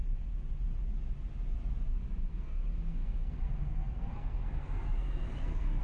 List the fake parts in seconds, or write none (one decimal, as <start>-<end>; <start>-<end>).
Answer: 2.3-5.8